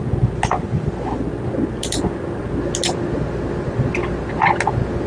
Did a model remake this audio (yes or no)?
no